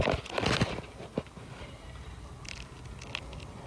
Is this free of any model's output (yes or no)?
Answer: yes